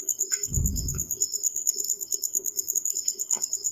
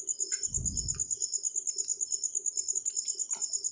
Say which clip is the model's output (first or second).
first